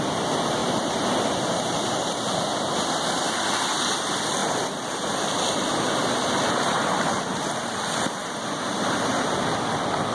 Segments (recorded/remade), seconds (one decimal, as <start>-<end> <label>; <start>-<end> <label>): 0.0-0.6 recorded; 0.6-2.4 remade; 2.4-8.2 recorded; 8.2-9.1 remade; 9.1-10.1 recorded